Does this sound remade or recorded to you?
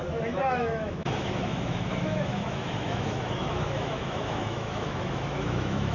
remade